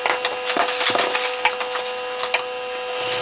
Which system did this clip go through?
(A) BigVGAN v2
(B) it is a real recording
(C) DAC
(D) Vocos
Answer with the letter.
B